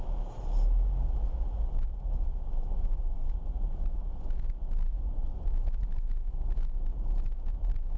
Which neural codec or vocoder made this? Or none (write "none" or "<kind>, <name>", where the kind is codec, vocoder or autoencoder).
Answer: none